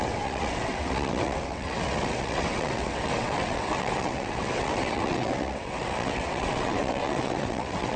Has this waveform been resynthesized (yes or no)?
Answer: yes